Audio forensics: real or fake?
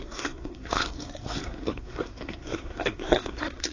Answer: fake